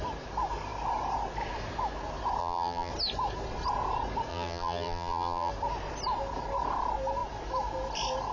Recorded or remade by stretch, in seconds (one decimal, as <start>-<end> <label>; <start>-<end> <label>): 0.0-2.4 recorded; 2.4-2.9 remade; 2.9-4.3 recorded; 4.3-5.5 remade; 5.5-8.3 recorded